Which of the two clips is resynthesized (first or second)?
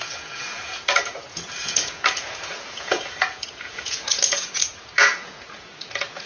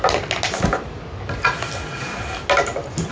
first